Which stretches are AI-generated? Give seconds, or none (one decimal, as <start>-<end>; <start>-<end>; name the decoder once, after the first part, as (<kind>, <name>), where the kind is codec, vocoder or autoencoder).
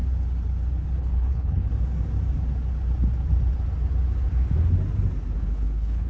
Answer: 1.0-1.7 (codec, HILCodec); 5.4-6.1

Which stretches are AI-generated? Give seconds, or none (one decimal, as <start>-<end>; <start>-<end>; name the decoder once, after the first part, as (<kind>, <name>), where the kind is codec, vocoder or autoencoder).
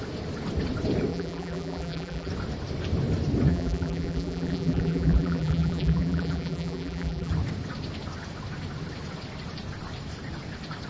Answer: 1.1-2.3 (vocoder, BigVGAN v2); 3.5-7.3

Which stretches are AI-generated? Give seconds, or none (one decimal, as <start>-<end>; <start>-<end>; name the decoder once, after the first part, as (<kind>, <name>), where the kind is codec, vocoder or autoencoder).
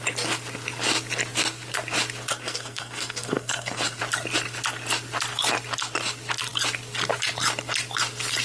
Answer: 2.3-4.0 (codec, SNAC)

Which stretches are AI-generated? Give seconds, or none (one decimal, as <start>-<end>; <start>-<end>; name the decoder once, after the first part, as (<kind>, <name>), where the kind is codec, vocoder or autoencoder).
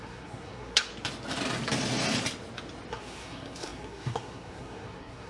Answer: 0.0-0.9 (codec, SNAC); 2.9-5.3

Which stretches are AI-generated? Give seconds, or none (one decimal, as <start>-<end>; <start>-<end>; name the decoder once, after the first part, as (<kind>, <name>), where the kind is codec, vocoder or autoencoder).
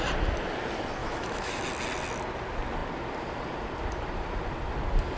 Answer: 1.0-1.6 (autoencoder, DAC-VAE)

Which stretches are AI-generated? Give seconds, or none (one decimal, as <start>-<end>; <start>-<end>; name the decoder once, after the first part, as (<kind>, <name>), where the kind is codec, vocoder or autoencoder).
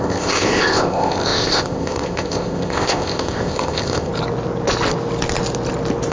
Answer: 0.0-4.1 (codec, ZipCodec)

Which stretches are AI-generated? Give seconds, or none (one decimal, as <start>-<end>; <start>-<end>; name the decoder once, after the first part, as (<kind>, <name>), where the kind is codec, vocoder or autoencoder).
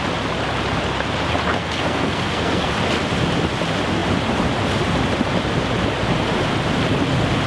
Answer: 1.5-2.7 (codec, SNAC)